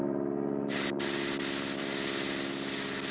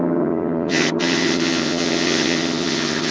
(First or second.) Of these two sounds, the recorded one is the first